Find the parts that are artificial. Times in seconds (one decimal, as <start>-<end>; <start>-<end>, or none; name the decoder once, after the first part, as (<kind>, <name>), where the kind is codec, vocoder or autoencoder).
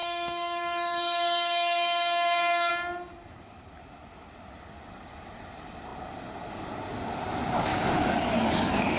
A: 0.0-2.7 (codec, DAC); 7.7-9.0